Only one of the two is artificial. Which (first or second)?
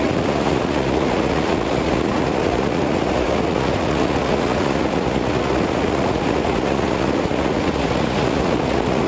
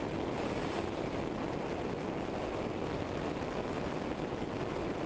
first